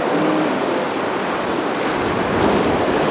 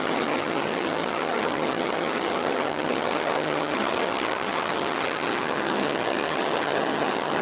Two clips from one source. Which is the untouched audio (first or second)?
first